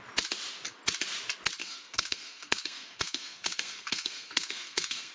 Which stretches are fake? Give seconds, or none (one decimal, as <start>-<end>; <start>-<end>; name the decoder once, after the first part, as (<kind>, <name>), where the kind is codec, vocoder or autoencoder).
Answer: 1.6-5.1 (codec, SNAC)